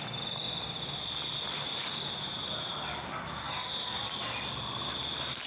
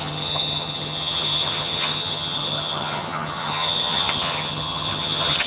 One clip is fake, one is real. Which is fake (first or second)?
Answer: second